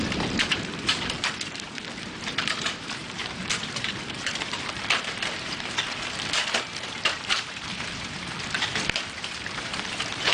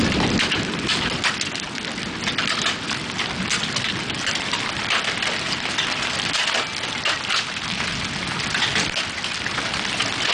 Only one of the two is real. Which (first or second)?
second